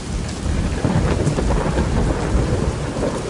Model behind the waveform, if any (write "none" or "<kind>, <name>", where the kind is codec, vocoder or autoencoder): none